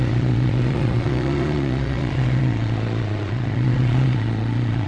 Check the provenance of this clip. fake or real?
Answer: fake